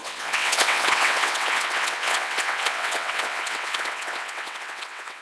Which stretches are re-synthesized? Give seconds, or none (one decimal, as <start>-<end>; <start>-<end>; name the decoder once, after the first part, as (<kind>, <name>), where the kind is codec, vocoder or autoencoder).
0.0-5.2 (vocoder, WaveNeXt)